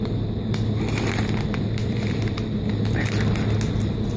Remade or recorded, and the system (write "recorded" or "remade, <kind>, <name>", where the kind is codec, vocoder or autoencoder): recorded